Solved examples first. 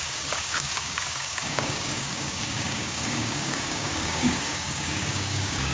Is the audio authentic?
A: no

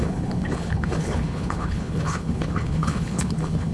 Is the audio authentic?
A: no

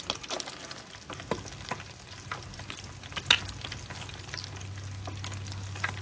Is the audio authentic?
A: yes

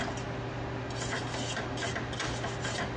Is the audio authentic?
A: yes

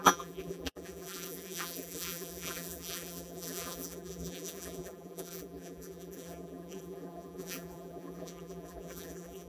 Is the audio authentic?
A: no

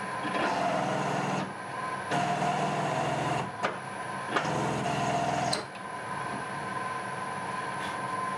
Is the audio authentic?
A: yes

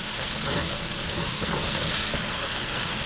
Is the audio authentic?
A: no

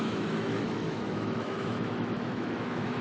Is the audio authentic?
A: no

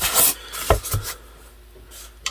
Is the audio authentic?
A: yes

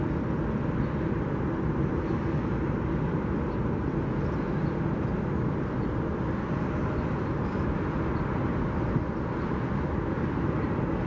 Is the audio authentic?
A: yes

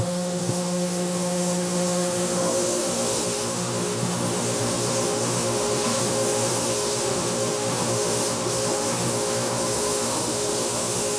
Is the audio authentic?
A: no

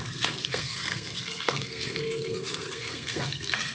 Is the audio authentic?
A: no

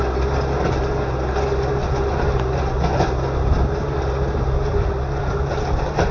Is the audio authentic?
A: yes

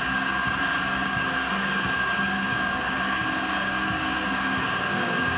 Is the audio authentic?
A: no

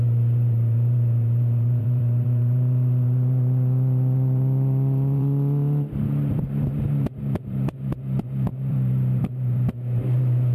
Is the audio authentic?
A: no